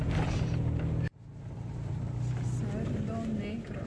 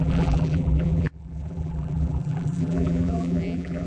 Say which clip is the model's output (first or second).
second